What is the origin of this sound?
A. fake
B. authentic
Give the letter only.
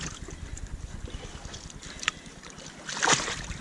A